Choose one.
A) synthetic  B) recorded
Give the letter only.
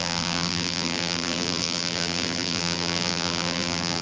A